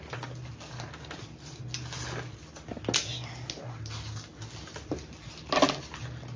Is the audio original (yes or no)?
yes